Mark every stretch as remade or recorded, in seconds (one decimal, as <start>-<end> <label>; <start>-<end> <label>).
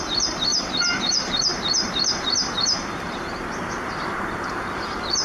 0.0-0.5 remade; 0.5-1.0 recorded; 1.0-5.2 remade